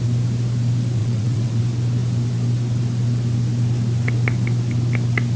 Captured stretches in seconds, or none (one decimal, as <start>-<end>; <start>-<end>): 0.0-1.0; 1.6-5.4